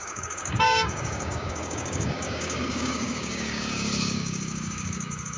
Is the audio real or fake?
fake